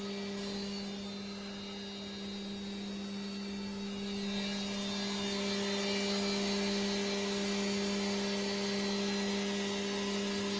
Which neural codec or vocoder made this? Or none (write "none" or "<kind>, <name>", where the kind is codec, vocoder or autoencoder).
none